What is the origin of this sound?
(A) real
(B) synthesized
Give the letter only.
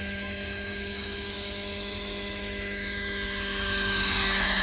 B